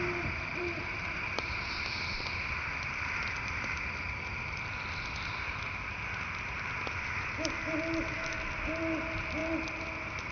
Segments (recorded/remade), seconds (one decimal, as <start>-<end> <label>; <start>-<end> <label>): 0.0-0.5 recorded; 0.5-1.8 remade; 1.8-10.3 recorded